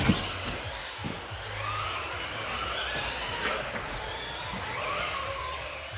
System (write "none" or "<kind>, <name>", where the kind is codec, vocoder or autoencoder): none